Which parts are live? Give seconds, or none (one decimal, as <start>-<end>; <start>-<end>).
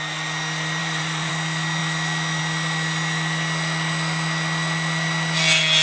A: 0.0-0.8; 1.3-5.8